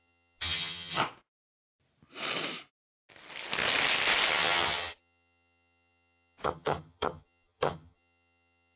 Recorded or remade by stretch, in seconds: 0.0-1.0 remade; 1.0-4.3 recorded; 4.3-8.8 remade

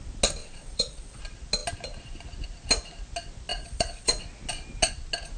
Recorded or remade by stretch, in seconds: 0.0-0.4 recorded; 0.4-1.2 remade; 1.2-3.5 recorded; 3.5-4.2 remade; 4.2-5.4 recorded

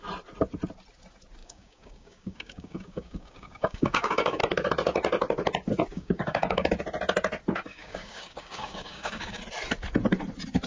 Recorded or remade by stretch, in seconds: 0.0-1.4 recorded; 1.4-4.4 remade; 4.4-5.9 recorded; 5.9-6.7 remade; 6.7-7.7 recorded; 7.7-9.4 remade; 9.4-10.7 recorded